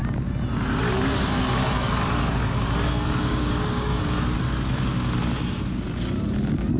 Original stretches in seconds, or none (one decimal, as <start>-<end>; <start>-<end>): 0.0-3.3; 4.0-6.8